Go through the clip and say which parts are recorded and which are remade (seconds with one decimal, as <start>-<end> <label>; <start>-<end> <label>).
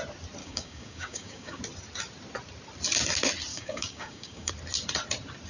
0.0-0.4 recorded; 0.4-1.6 remade; 1.6-3.5 recorded; 3.5-4.5 remade; 4.5-5.5 recorded